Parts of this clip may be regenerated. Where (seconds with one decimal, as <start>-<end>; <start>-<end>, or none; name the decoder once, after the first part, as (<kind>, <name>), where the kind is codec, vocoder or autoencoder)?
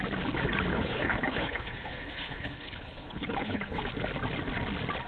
0.7-3.8 (codec, HILCodec)